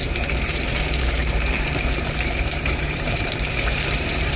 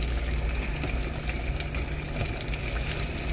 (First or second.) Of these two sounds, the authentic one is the second